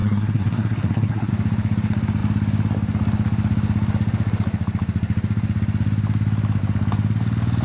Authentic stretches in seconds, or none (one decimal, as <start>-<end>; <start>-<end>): 1.3-7.6